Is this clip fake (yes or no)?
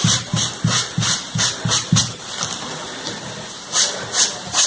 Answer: no